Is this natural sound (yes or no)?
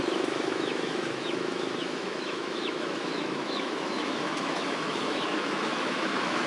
no